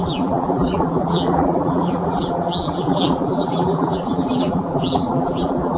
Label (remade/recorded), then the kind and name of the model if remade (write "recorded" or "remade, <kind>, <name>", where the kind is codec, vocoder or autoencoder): remade, vocoder, BigVGAN v2